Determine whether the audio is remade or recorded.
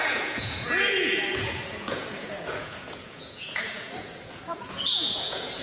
remade